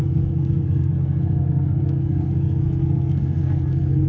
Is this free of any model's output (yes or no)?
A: no